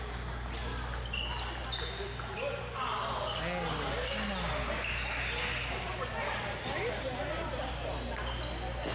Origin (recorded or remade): recorded